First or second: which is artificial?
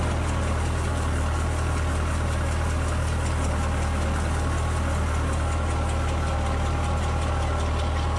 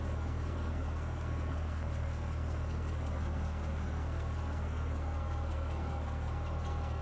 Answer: second